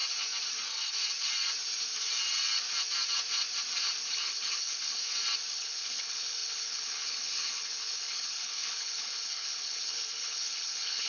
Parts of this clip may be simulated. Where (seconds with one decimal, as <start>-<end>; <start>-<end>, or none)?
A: 4.1-5.0; 5.5-11.1